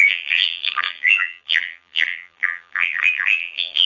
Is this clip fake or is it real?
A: fake